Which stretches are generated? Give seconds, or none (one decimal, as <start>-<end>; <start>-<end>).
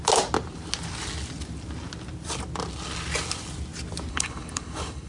4.1-5.1